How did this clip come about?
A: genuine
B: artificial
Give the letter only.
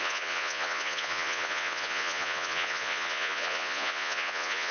B